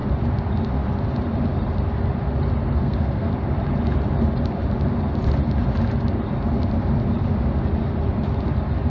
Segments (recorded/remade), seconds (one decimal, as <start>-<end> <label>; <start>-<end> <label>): 0.0-2.7 recorded; 2.7-3.3 remade; 3.3-8.9 recorded